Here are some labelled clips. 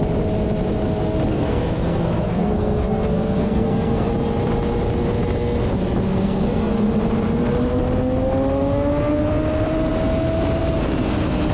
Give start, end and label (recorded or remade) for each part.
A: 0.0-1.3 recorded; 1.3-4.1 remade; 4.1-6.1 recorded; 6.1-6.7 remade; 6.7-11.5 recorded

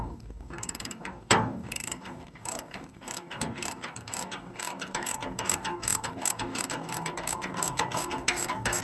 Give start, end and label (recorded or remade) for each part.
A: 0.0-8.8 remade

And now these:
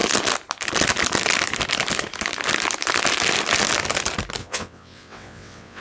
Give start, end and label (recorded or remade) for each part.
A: 0.0-4.4 recorded; 4.4-5.8 remade

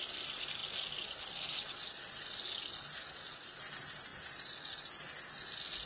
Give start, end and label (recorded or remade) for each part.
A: 0.0-5.9 recorded

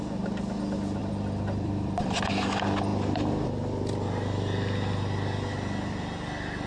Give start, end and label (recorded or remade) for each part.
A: 0.0-1.0 recorded; 1.0-2.3 remade; 2.3-6.7 recorded

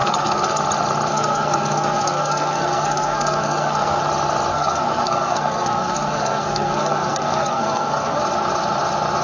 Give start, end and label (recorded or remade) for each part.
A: 0.0-0.6 remade; 0.6-1.1 recorded; 1.1-4.0 remade; 4.0-4.5 recorded; 4.5-8.2 remade; 8.2-9.2 recorded

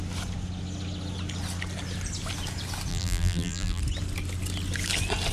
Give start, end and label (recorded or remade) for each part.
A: 0.0-2.9 recorded; 2.9-3.8 remade; 3.8-5.3 recorded